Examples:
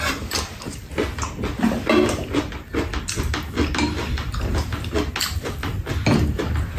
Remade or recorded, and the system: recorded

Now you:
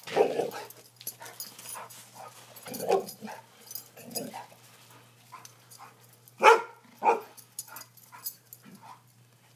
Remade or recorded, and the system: recorded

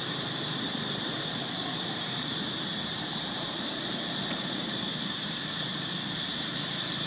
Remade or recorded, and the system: remade, vocoder, BigVGAN v2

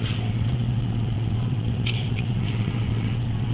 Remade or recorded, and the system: remade, vocoder, WaveNeXt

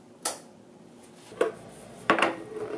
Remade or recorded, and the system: recorded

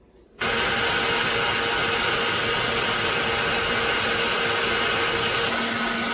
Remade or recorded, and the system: recorded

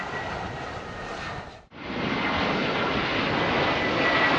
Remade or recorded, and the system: recorded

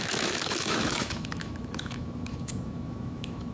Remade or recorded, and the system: remade, autoencoder, DAC-VAE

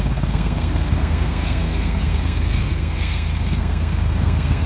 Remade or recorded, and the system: remade, codec, SNAC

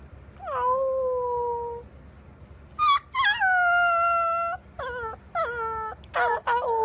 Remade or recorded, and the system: recorded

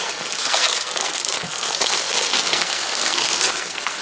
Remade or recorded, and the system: remade, codec, SNAC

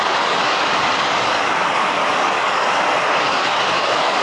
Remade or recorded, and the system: remade, codec, DAC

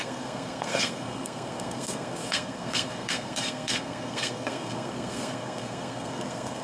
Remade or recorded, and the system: remade, codec, SNAC